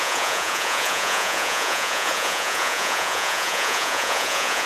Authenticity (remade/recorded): remade